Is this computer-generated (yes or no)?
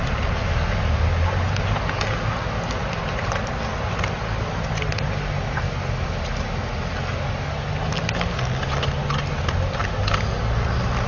no